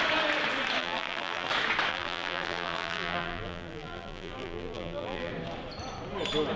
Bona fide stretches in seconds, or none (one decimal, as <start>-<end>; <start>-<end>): 0.0-0.8; 1.5-1.9; 5.3-6.6